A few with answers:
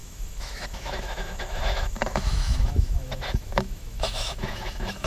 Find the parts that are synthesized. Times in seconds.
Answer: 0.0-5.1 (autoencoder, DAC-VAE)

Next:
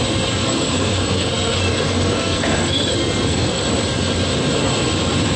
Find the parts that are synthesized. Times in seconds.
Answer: 0.4-3.6 (codec, SNAC)

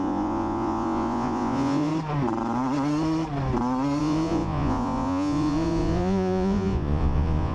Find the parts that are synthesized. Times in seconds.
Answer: 0.0-1.9 (vocoder, Vocos); 4.0-7.5

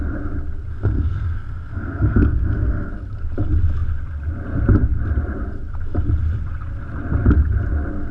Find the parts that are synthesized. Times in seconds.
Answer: 0.7-2.9 (codec, SNAC)

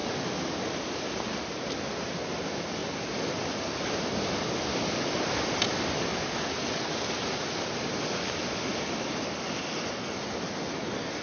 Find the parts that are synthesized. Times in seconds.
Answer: none

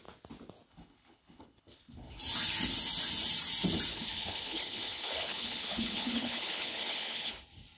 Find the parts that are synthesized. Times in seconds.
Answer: 0.7-2.2 (codec, HILCodec); 3.9-7.3